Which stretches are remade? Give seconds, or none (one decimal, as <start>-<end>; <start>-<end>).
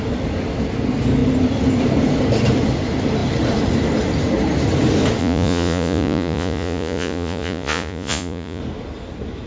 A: 5.2-8.6